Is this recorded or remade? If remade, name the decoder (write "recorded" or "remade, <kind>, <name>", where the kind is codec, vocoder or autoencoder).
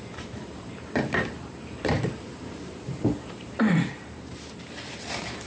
remade, vocoder, BigVGAN v2